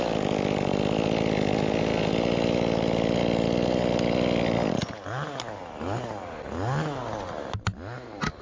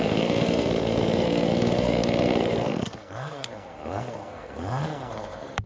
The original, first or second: first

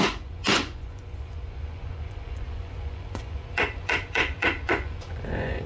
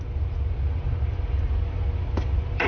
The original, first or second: second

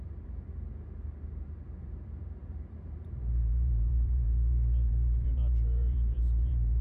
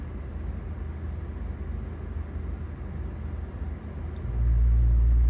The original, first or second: second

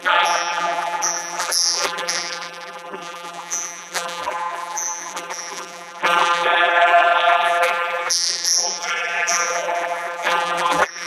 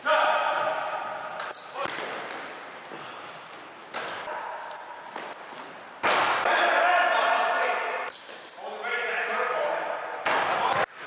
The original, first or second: second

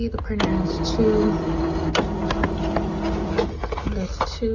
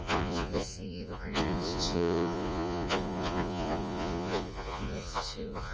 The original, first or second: first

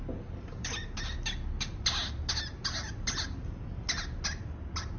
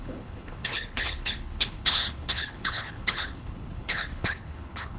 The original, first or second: first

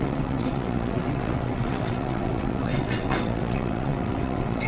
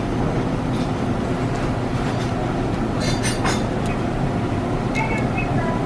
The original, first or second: second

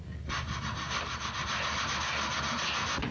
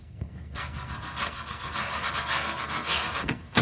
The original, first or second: first